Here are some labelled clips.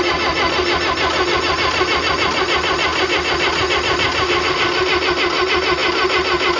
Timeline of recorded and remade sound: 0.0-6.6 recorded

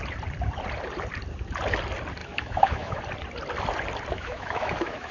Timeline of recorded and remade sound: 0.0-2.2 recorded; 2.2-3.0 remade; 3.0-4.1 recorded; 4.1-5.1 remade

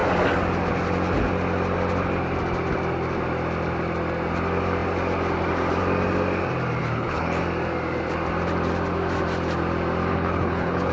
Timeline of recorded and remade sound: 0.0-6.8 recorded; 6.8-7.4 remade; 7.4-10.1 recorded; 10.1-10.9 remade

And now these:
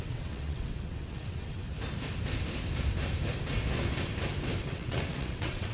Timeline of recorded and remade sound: 0.0-1.7 remade; 1.7-4.6 recorded; 4.6-5.7 remade

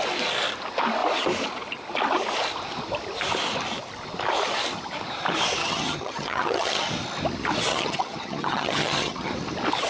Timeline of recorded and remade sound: 0.0-5.6 recorded; 5.6-6.9 remade; 6.9-7.7 recorded; 7.7-9.3 remade; 9.3-9.9 recorded